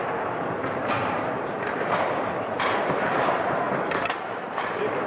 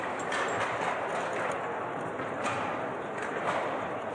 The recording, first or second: second